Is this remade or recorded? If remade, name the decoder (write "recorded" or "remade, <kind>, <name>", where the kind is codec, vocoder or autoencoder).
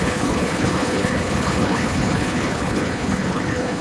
remade, codec, HILCodec